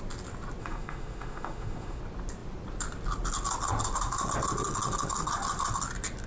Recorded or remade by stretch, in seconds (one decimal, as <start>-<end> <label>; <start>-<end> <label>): 0.0-0.6 recorded; 0.6-2.0 remade; 2.0-6.3 recorded